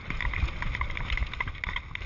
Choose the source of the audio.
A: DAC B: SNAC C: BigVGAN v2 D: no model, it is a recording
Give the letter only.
D